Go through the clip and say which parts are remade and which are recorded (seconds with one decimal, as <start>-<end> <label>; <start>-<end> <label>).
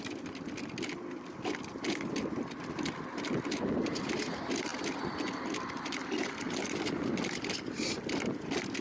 0.0-8.8 recorded